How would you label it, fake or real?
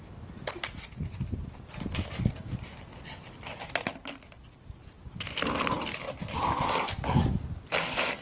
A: real